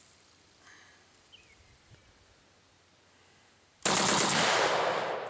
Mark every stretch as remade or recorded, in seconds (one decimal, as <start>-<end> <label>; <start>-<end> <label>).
0.0-2.0 remade; 2.0-5.3 recorded